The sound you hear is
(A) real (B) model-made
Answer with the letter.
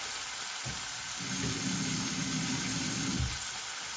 A